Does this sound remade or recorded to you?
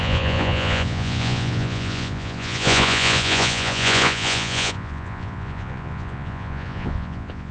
remade